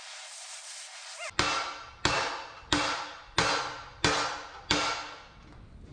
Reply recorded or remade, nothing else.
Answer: recorded